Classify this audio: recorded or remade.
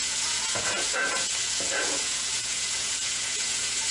remade